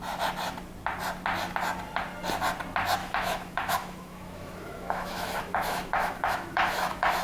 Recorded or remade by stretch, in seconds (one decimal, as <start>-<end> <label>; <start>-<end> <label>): 0.0-3.0 recorded; 3.0-7.2 remade